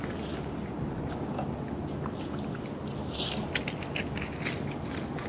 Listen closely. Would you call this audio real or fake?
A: real